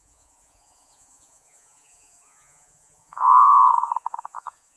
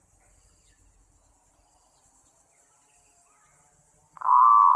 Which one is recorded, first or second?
second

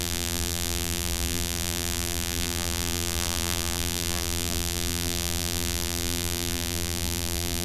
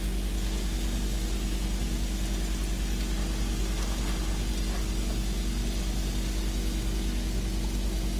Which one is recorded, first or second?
second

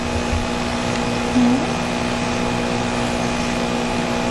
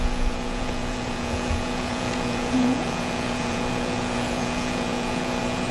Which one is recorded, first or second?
first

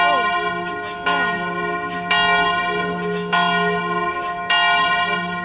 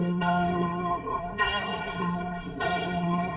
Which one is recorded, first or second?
first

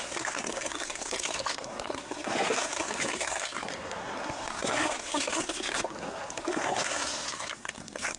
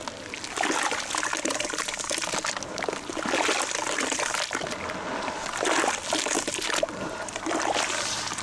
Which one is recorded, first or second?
second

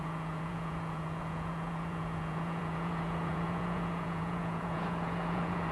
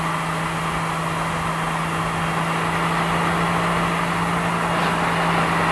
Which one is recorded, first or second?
second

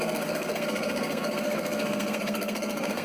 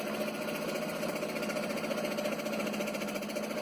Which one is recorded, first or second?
second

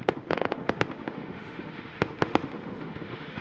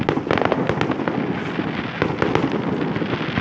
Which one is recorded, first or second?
second